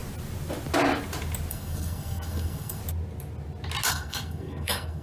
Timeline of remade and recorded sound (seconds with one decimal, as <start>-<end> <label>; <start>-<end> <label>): 0.0-1.5 recorded; 1.5-2.8 remade; 2.8-3.9 recorded; 3.9-5.0 remade